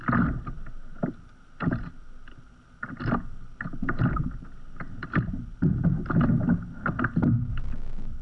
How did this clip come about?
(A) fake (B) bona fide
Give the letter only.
B